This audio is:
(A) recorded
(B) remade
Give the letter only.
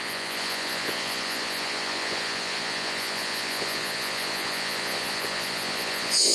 B